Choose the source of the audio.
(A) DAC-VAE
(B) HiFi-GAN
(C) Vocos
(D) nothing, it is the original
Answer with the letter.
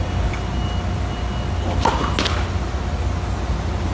D